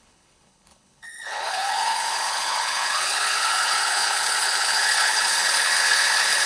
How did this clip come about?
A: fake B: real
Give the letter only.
A